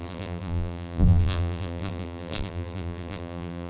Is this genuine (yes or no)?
no